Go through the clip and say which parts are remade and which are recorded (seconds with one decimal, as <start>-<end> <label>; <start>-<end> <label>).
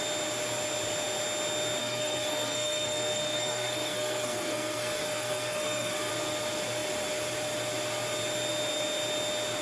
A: 0.0-1.8 recorded; 1.8-6.1 remade; 6.1-9.6 recorded